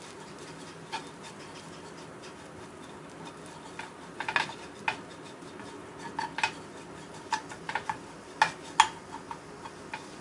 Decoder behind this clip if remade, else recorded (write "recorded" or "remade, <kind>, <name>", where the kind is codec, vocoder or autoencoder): recorded